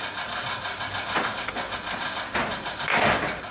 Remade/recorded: recorded